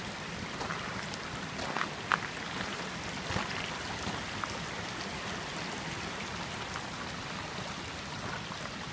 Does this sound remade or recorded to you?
recorded